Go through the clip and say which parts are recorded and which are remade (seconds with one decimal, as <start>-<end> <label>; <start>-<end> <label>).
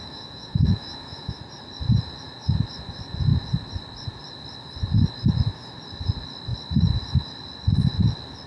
0.0-1.4 remade; 1.4-8.5 recorded